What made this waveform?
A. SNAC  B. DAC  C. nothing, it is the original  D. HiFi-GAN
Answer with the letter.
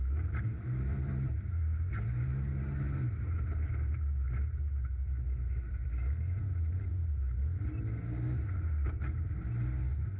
C